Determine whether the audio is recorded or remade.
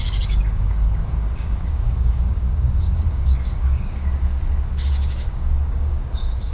remade